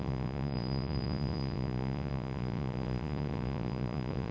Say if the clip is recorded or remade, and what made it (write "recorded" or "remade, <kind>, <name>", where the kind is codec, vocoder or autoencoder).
remade, vocoder, Vocos